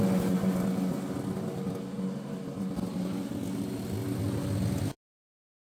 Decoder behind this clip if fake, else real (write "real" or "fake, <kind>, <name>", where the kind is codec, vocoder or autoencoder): real